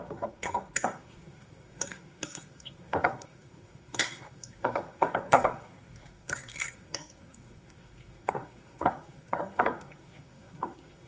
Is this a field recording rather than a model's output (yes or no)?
no